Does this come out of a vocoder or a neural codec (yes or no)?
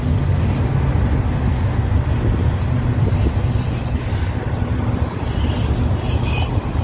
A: no